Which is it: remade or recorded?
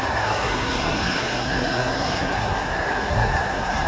remade